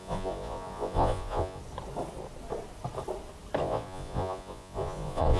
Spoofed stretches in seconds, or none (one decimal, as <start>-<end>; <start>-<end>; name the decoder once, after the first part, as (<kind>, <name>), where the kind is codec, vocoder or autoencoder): 0.0-1.6 (vocoder, Vocos); 3.6-5.4